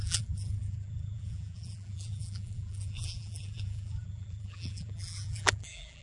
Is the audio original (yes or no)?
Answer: no